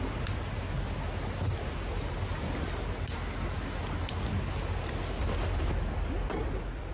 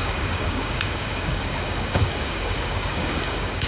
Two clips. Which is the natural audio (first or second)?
first